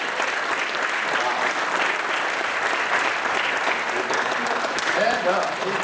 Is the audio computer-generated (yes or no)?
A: no